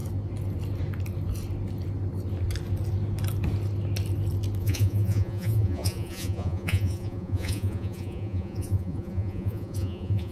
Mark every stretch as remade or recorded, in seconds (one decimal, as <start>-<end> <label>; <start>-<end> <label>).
0.0-4.6 recorded; 4.6-10.3 remade